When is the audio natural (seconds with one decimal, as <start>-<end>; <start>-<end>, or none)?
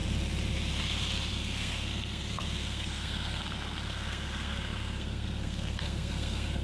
0.0-1.3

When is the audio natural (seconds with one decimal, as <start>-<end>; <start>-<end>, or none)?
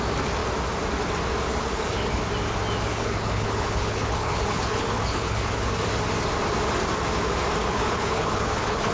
0.0-1.5; 2.2-2.9; 5.5-7.6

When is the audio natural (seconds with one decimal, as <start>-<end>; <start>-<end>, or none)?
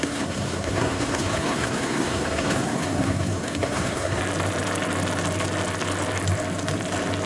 4.2-7.3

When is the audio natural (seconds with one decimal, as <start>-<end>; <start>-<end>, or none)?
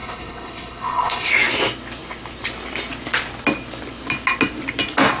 1.3-5.2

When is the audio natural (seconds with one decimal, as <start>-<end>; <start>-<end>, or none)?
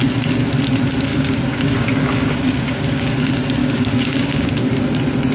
0.0-1.1; 3.1-3.6; 4.7-5.3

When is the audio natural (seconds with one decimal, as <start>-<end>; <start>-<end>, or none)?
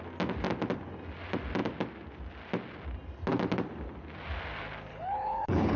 0.0-4.9